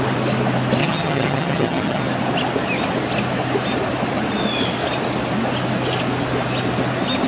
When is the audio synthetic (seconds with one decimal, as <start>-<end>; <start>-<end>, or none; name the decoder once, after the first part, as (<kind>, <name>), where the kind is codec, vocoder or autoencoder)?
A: 0.8-2.0 (vocoder, HiFi-GAN)